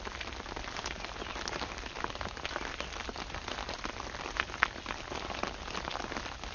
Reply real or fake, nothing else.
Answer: real